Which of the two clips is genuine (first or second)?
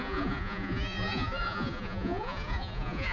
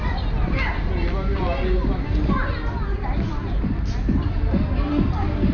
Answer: second